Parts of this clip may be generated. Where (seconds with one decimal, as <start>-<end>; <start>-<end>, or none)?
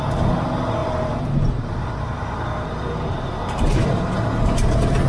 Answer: 0.8-3.8